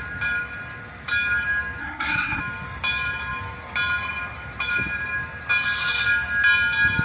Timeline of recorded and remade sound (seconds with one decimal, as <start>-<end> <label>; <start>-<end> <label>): 0.0-1.8 recorded; 1.8-2.4 remade; 2.4-7.0 recorded